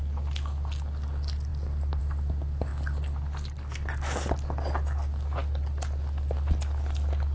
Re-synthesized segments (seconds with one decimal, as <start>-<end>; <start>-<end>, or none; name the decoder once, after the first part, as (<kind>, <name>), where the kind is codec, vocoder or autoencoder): none